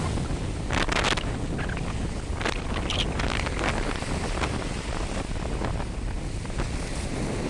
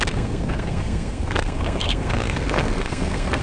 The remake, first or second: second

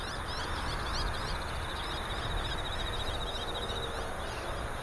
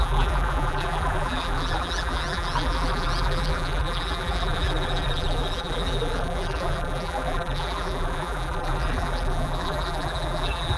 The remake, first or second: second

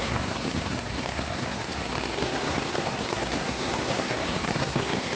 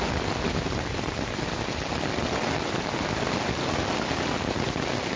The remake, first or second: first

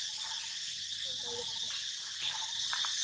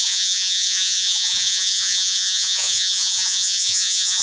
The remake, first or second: second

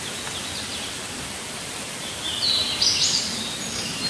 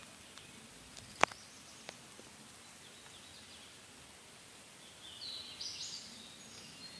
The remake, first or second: first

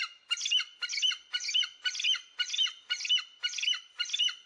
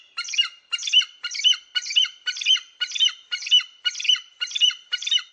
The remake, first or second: second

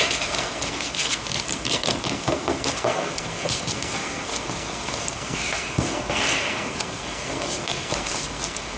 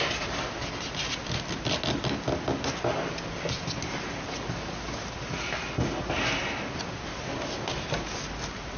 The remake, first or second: first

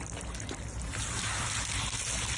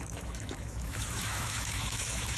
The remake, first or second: second